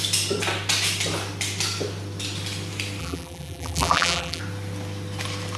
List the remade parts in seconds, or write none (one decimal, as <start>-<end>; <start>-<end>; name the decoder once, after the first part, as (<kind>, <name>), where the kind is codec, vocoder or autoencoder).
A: 3.0-4.4 (vocoder, BigVGAN v2)